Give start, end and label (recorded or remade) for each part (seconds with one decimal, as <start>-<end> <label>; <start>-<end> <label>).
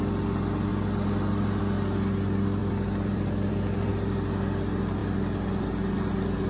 0.0-2.6 recorded; 2.6-3.9 remade; 3.9-6.5 recorded